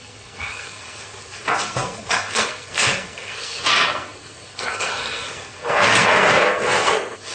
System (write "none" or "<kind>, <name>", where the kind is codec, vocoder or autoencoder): codec, SNAC